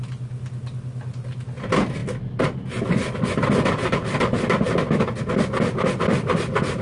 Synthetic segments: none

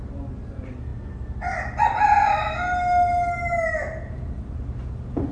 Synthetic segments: none

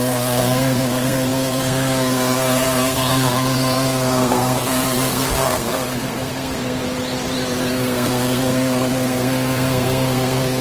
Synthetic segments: 0.0-6.8; 7.7-10.6